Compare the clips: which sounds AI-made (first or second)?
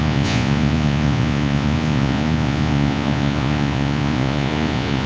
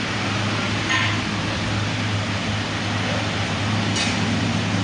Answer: first